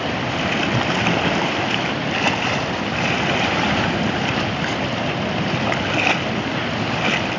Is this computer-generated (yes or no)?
no